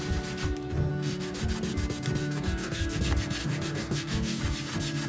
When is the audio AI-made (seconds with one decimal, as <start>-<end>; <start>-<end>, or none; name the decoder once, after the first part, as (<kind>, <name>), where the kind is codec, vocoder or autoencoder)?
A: 0.9-1.4 (codec, DAC); 2.2-3.0; 3.4-4.4